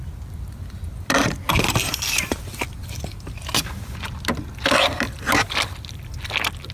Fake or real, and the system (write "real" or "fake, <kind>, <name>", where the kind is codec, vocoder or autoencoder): real